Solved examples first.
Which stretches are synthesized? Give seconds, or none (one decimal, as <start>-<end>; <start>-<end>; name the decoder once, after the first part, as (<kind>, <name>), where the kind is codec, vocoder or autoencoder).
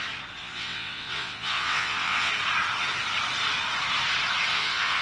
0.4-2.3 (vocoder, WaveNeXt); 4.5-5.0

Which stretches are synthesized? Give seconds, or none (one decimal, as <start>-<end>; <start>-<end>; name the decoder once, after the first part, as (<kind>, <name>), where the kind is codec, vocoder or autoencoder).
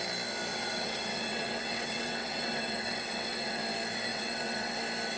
0.5-3.6 (vocoder, WaveNeXt); 4.1-4.8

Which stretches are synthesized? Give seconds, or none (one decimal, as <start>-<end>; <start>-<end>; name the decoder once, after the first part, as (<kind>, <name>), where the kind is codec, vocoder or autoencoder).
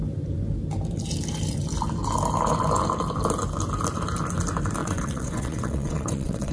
4.8-6.5 (vocoder, WaveNeXt)